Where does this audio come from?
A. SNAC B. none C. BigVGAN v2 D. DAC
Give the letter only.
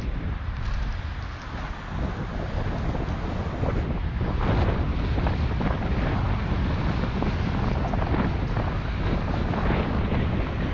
B